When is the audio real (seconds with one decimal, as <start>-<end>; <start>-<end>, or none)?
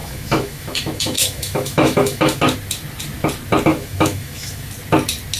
2.4-3.7; 4.7-5.4